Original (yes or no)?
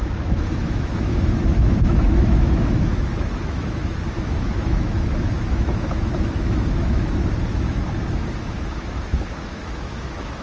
no